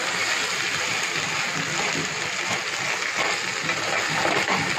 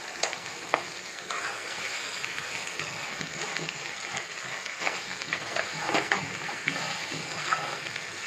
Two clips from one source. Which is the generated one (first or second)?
second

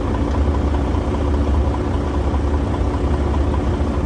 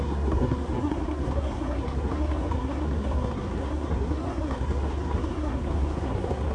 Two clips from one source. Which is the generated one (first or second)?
second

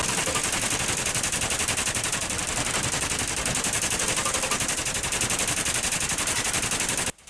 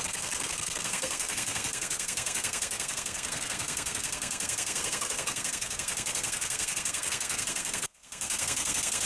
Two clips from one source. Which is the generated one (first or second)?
second